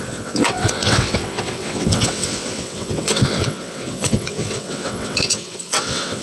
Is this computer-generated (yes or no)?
yes